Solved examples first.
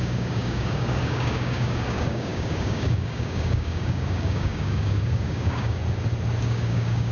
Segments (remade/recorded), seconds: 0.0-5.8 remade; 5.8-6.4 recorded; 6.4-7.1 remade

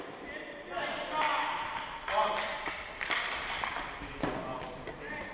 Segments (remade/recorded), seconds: 0.0-5.3 recorded

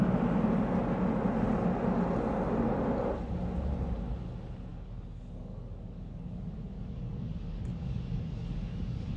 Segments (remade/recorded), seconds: 0.0-4.7 recorded; 4.7-9.2 remade

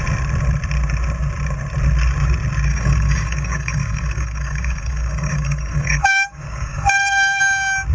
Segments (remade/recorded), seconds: 0.0-2.7 recorded; 2.7-7.4 remade; 7.4-7.9 recorded

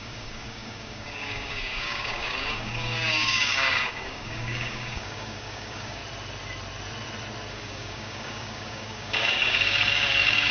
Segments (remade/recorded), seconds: 0.0-6.0 remade; 6.0-7.5 recorded; 7.5-10.5 remade

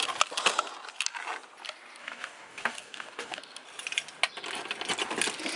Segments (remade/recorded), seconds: 0.0-2.0 recorded; 2.0-3.4 remade; 3.4-5.6 recorded

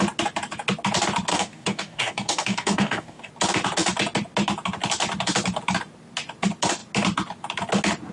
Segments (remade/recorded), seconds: 0.0-1.3 recorded; 1.3-3.3 remade; 3.3-8.1 recorded

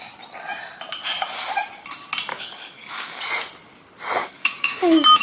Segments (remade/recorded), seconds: 0.0-2.3 recorded; 2.3-3.2 remade; 3.2-4.2 recorded; 4.2-5.2 remade